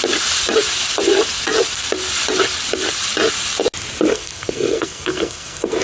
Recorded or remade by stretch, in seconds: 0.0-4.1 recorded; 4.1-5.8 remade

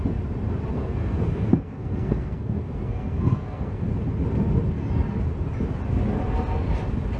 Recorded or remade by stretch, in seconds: 0.0-0.7 recorded; 0.7-3.9 remade; 3.9-7.2 recorded

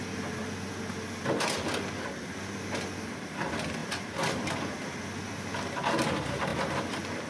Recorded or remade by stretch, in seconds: 0.0-7.3 recorded

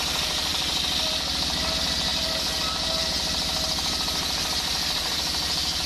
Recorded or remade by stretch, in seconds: 0.0-5.9 recorded

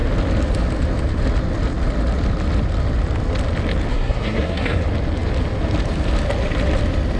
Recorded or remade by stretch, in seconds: 0.0-3.9 recorded; 3.9-4.8 remade; 4.8-7.2 recorded

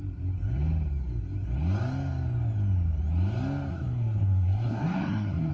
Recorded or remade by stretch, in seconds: 0.0-3.7 recorded; 3.7-5.5 remade

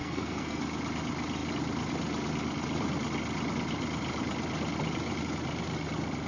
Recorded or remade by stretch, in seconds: 0.0-0.6 remade; 0.6-6.3 recorded